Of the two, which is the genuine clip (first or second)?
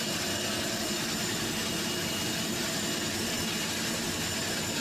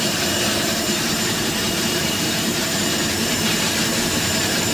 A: first